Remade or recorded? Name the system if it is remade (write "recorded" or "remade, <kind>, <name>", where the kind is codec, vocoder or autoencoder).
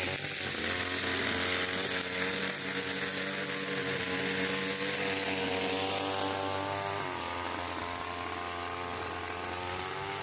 recorded